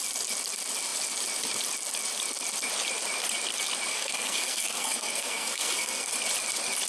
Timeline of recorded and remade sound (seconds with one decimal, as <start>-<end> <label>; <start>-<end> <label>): 0.0-3.9 recorded; 3.9-6.1 remade; 6.1-6.9 recorded

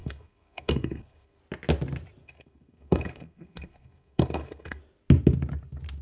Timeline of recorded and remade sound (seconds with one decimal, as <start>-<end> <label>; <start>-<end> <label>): 0.0-1.4 remade; 1.4-2.2 recorded; 2.2-4.8 remade; 4.8-6.0 recorded

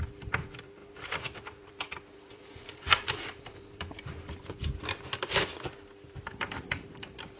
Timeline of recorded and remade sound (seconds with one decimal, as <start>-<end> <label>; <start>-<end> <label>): 0.0-5.5 remade; 5.5-6.1 recorded; 6.1-7.4 remade

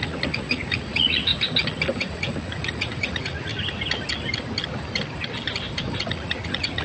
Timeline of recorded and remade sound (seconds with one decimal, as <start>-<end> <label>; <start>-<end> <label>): 0.0-1.3 remade; 1.3-2.0 recorded; 2.0-3.5 remade; 3.5-5.8 recorded; 5.8-6.8 remade

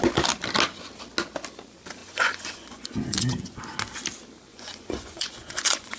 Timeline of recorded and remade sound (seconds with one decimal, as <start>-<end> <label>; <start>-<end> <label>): 0.0-2.0 recorded; 2.0-3.6 remade; 3.6-4.5 recorded; 4.5-6.0 remade